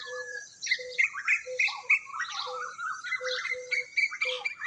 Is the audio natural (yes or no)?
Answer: yes